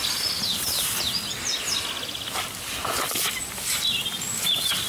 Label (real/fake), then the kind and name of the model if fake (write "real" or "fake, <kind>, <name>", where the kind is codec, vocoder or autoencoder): real